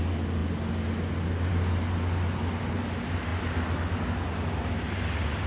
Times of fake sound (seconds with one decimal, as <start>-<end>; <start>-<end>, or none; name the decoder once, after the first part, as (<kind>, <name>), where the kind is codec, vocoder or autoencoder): none